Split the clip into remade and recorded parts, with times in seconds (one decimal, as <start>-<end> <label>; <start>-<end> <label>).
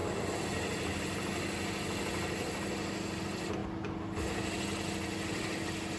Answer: 0.0-6.0 recorded